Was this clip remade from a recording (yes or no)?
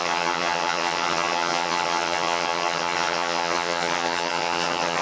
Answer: yes